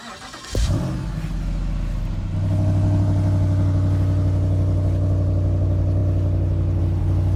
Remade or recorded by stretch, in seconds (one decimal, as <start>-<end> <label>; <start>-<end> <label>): 0.0-7.4 recorded